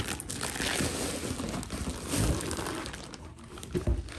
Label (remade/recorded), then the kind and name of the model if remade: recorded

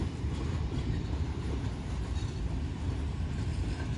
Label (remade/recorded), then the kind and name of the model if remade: remade, vocoder, BigVGAN v2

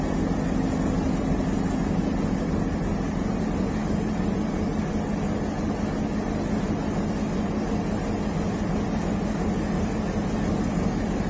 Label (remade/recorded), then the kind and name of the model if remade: recorded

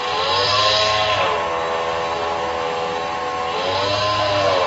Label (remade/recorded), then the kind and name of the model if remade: recorded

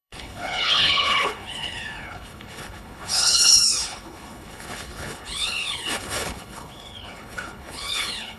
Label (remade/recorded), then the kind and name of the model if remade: remade, codec, HILCodec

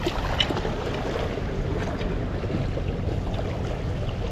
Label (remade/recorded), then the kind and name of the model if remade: recorded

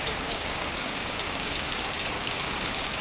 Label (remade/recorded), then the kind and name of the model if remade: remade, codec, DAC